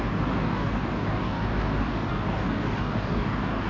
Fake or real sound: fake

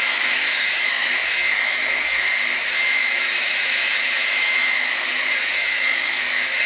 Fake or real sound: fake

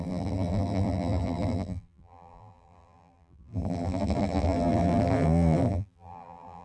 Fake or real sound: fake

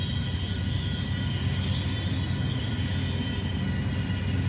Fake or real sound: real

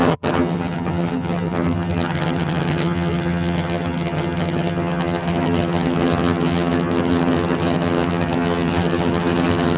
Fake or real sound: fake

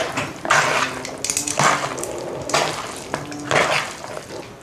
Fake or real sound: real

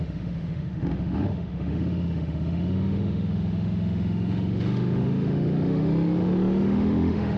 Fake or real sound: fake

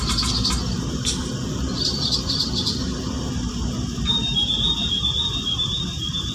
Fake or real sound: fake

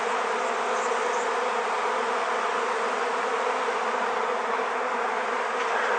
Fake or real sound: real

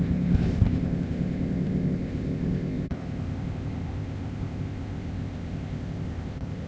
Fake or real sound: fake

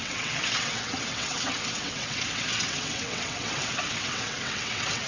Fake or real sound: fake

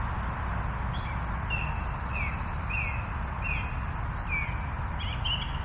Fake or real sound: real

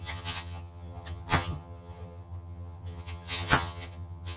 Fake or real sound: fake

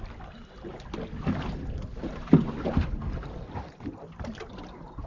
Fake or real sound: real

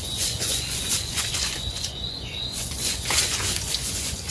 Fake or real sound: fake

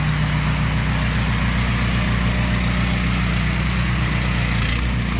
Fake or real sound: real